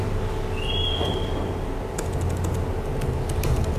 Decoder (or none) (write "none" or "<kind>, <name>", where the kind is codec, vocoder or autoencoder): none